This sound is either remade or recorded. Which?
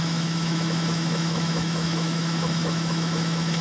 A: remade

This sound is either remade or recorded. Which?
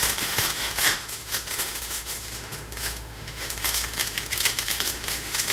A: remade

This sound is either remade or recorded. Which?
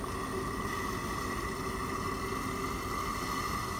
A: recorded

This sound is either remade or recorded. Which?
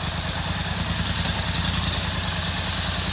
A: recorded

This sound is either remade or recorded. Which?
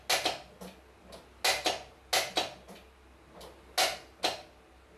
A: recorded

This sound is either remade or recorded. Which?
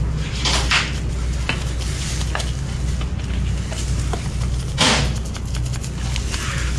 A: recorded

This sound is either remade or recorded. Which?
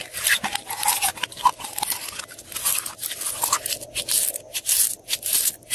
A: recorded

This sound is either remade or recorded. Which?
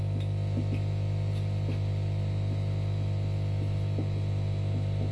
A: recorded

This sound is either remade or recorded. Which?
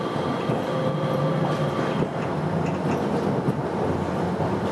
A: recorded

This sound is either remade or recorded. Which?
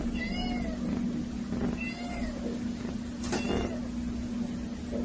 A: recorded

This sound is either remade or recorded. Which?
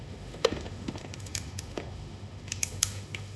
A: remade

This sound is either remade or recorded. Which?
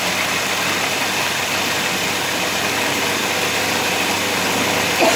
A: recorded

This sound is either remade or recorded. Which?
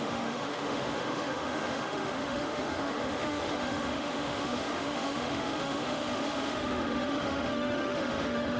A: remade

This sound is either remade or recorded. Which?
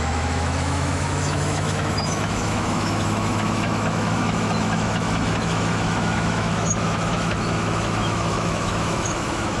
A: remade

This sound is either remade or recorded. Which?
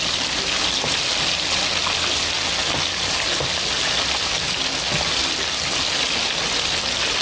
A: recorded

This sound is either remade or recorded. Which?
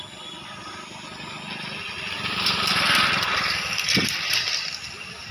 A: recorded